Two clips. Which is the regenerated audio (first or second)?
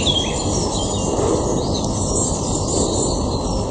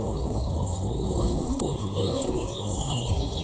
second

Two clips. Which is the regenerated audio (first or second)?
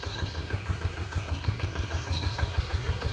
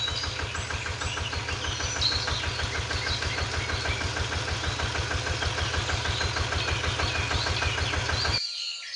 first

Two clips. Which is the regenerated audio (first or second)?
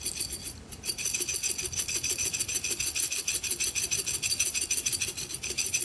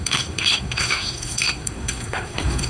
second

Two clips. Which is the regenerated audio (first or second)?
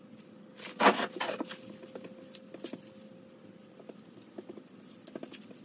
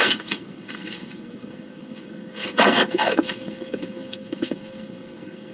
second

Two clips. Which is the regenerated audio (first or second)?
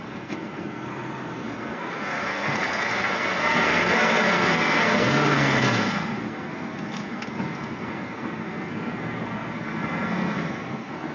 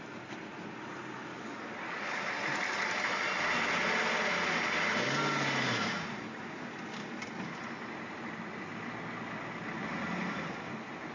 first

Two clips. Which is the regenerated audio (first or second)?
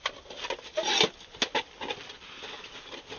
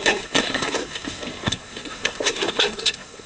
second